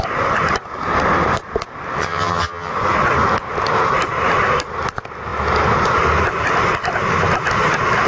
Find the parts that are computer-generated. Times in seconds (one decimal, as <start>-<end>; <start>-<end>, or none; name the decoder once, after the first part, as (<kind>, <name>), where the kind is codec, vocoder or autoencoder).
2.0-2.7 (vocoder, HiFi-GAN)